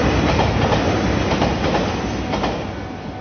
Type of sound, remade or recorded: recorded